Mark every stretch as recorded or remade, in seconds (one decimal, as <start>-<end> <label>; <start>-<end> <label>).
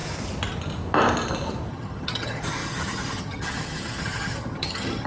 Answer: 0.0-1.7 recorded; 1.7-5.1 remade